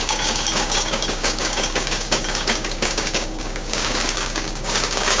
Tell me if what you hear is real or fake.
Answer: fake